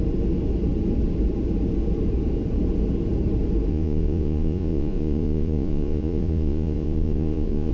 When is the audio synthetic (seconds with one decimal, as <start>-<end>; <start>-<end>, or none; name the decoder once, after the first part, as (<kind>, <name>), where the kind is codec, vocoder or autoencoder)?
3.7-7.7 (vocoder, Vocos)